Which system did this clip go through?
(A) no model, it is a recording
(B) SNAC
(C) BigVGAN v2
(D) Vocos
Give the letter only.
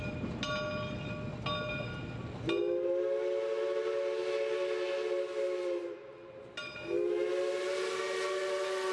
A